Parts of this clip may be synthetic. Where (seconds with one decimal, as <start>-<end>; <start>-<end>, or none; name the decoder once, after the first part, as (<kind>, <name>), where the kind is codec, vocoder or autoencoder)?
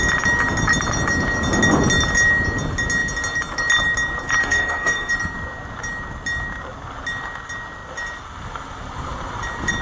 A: 4.4-5.1 (codec, SNAC)